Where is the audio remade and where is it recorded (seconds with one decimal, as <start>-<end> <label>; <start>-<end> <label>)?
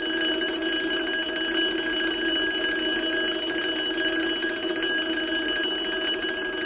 0.0-6.7 recorded